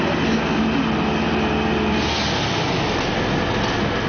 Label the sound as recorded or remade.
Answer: recorded